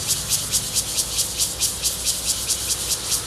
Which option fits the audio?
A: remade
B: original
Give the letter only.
B